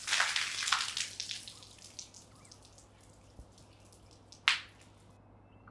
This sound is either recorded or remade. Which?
recorded